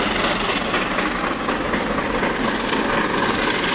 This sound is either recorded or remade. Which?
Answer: recorded